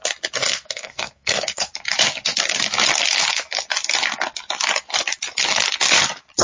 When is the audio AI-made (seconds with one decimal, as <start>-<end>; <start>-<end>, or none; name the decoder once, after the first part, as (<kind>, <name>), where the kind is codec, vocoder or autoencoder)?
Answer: 0.4-1.7 (codec, SNAC)

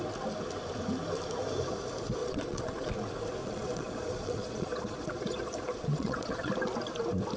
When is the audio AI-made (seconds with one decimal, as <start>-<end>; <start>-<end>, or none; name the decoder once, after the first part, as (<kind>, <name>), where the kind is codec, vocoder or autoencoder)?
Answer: 2.2-2.9 (vocoder, Vocos); 3.4-6.5

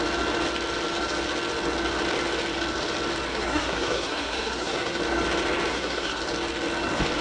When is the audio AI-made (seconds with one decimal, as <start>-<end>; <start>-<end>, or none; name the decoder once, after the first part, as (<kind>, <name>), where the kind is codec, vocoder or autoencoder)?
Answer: 3.3-5.0 (codec, SNAC); 5.7-6.2

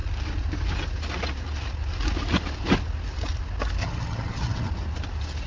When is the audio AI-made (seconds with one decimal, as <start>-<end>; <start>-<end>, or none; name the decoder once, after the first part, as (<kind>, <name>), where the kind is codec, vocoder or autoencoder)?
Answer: 3.8-4.7 (vocoder, HiFi-GAN)